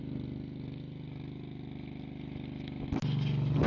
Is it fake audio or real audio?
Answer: real